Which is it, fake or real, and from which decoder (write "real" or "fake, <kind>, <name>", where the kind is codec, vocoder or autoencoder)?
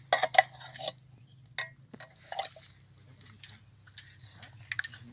real